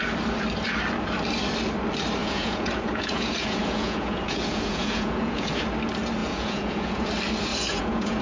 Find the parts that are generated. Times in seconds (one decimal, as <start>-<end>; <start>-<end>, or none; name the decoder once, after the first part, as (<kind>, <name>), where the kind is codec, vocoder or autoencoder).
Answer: 2.2-5.5 (vocoder, Vocos); 6.2-7.1; 7.5-8.2